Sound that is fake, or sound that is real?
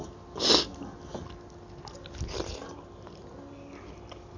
real